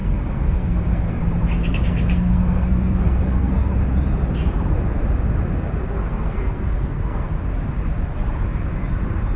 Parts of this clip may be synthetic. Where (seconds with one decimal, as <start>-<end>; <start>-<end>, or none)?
0.0-1.2; 1.6-3.7; 6.0-7.3